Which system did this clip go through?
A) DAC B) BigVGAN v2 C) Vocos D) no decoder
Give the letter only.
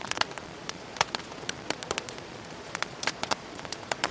C